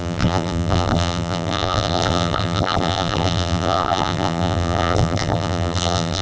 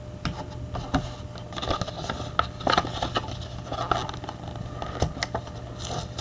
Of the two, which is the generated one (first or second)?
first